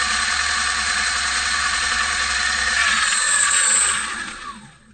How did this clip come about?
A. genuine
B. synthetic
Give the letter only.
B